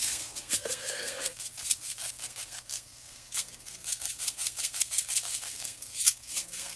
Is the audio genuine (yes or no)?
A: no